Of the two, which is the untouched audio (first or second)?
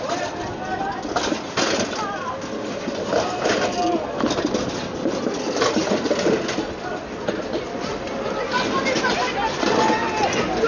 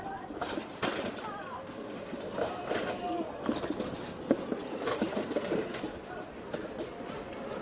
first